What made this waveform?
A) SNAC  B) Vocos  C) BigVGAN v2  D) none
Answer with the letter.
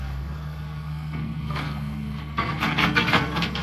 A